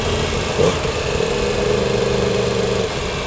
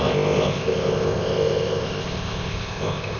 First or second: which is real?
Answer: first